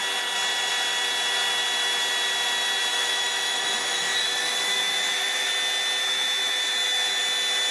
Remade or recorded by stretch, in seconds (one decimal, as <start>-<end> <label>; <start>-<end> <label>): 0.0-2.9 recorded; 2.9-5.5 remade; 5.5-6.0 recorded; 6.0-7.2 remade; 7.2-7.7 recorded